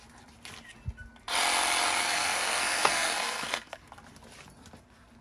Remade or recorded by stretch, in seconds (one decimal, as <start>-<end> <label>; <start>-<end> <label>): 0.0-2.0 recorded; 2.0-3.9 remade; 3.9-5.2 recorded

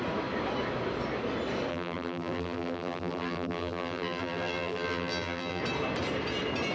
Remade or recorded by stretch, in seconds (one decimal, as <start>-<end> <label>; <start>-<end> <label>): 0.0-1.7 recorded; 1.7-5.6 remade; 5.6-6.7 recorded

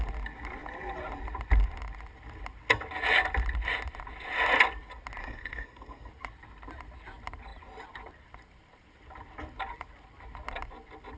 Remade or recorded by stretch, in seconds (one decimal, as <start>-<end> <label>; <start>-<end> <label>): 0.0-5.2 recorded; 5.2-6.1 remade; 6.1-11.2 recorded

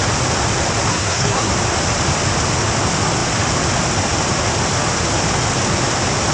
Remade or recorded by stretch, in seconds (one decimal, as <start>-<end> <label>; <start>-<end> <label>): 0.0-0.9 recorded; 0.9-1.5 remade; 1.5-6.3 recorded